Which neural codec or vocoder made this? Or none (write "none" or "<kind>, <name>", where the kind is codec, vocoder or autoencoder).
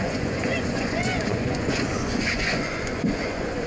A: vocoder, Vocos